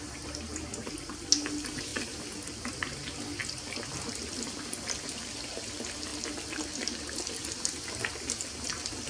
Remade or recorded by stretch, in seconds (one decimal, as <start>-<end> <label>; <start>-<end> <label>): 0.0-9.1 recorded